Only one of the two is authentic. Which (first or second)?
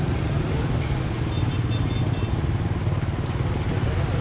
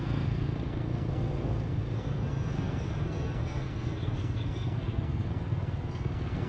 first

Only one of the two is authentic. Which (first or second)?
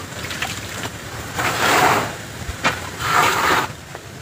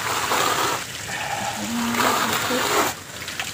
second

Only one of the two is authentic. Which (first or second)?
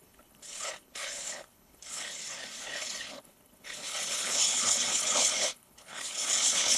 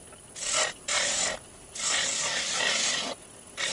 second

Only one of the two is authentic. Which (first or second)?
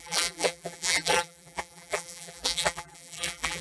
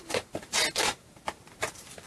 second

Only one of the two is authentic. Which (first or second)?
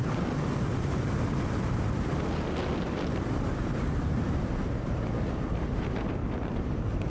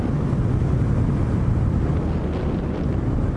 second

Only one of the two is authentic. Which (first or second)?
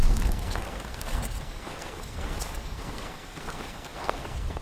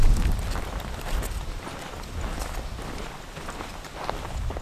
second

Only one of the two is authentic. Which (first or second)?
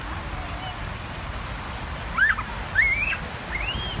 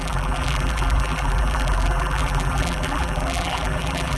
first